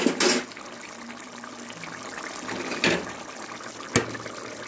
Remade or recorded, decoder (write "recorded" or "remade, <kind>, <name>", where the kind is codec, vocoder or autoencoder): recorded